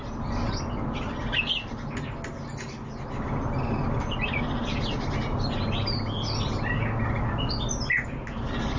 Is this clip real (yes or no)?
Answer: yes